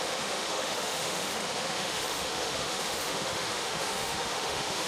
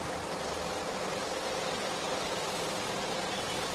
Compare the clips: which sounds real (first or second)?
second